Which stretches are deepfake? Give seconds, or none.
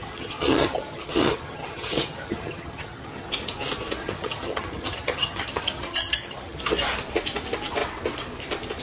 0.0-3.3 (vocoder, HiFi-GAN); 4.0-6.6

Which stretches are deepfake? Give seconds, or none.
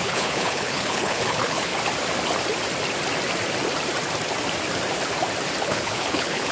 0.0-1.7 (codec, HILCodec); 5.6-6.5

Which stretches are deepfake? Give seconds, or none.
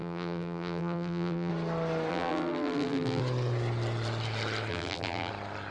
0.0-1.5 (vocoder, BigVGAN v2); 2.1-3.2; 4.7-5.3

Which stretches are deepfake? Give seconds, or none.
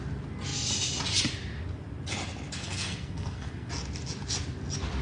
2.6-3.7 (codec, SNAC)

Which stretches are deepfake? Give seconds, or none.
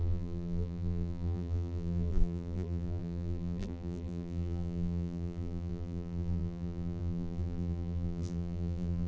0.0-9.1 (vocoder, BigVGAN v2)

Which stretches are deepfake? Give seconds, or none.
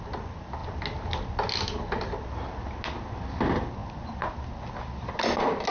none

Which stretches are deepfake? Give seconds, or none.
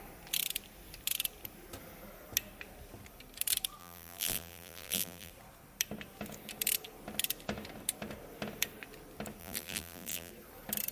3.8-5.3 (vocoder, BigVGAN v2); 9.4-10.3